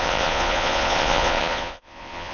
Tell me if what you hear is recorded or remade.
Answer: remade